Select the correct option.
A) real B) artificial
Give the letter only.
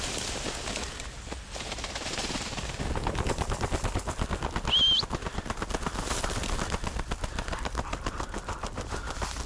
A